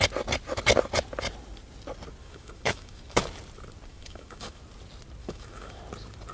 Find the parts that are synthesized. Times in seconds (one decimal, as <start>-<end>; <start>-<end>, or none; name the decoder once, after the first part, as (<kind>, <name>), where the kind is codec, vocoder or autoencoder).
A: 2.2-3.2 (autoencoder, DAC-VAE); 3.9-4.6; 5.2-5.8